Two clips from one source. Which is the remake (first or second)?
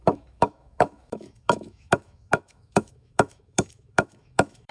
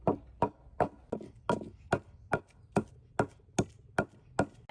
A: first